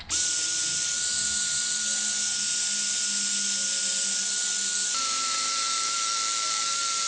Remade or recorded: recorded